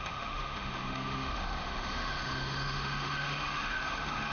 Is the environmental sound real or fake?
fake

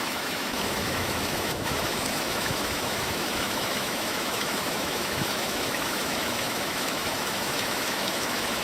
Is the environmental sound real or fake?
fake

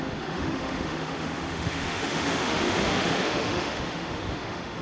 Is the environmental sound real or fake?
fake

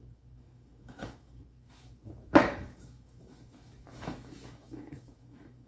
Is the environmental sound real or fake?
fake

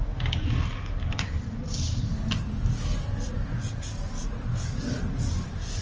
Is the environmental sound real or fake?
real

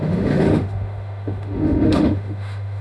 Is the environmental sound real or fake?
fake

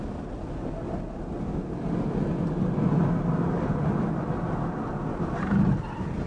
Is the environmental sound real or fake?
real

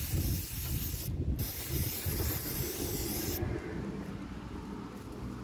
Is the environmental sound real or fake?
real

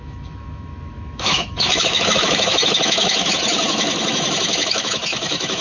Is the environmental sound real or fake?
fake